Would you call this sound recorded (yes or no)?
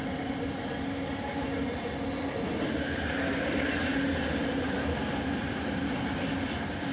no